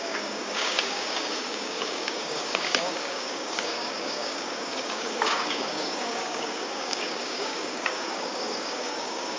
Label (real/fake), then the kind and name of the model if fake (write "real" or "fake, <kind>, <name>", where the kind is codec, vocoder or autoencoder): fake, codec, DAC